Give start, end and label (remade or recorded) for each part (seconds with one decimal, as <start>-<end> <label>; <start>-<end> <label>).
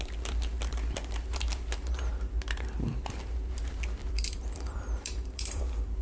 0.0-4.0 recorded; 4.0-5.6 remade; 5.6-6.0 recorded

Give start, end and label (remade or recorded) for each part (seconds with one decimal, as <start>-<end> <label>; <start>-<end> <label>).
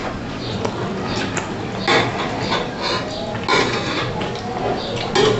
0.0-0.6 remade; 0.6-3.5 recorded; 3.5-4.0 remade; 4.0-5.4 recorded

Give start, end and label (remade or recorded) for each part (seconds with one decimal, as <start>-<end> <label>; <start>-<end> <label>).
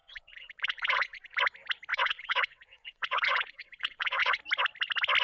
0.0-1.4 remade; 1.4-1.9 recorded; 1.9-4.4 remade; 4.4-5.2 recorded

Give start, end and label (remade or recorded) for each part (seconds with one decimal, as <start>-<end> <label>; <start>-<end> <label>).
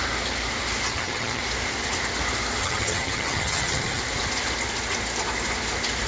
0.0-0.9 recorded; 0.9-1.4 remade; 1.4-2.6 recorded; 2.6-4.0 remade; 4.0-6.1 recorded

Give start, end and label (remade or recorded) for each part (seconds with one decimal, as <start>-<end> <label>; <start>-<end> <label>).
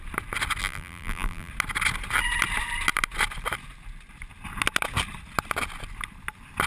0.0-0.6 recorded; 0.6-1.5 remade; 1.5-6.7 recorded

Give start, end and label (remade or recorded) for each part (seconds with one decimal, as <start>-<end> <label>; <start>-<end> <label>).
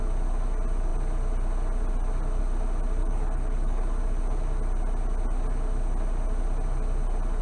0.0-3.0 recorded; 3.0-3.8 remade; 3.8-7.4 recorded